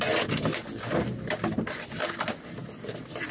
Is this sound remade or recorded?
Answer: recorded